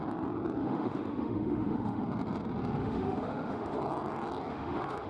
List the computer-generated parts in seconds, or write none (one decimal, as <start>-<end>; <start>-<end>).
0.6-2.0; 2.8-3.8; 4.5-5.1

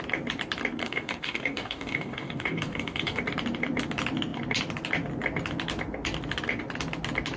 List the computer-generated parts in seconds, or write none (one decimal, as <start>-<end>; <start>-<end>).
0.8-3.2

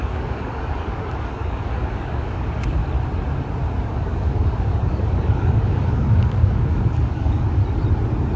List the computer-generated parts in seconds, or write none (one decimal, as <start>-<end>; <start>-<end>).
0.0-2.8; 3.8-7.6

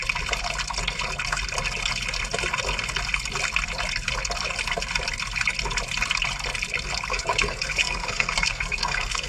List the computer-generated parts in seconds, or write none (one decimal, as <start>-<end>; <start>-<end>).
7.1-9.3